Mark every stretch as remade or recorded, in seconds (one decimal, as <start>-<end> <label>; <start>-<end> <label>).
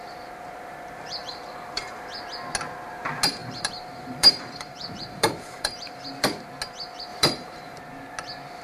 0.0-1.2 recorded; 1.2-2.0 remade; 2.0-3.4 recorded; 3.4-6.6 remade; 6.6-7.1 recorded; 7.1-7.8 remade; 7.8-8.6 recorded